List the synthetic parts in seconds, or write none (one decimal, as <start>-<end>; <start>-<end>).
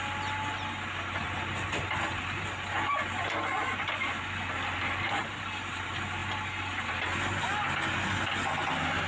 none